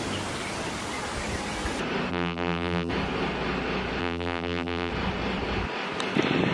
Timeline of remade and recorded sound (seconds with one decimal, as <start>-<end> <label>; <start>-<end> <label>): 0.0-2.1 recorded; 2.1-2.9 remade; 2.9-4.0 recorded; 4.0-4.9 remade; 4.9-6.5 recorded